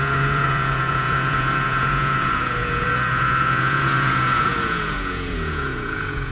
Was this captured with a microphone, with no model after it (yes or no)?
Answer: no